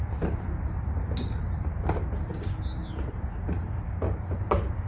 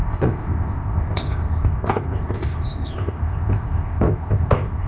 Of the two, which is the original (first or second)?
first